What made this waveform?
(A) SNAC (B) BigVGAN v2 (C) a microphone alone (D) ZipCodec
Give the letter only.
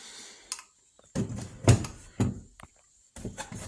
C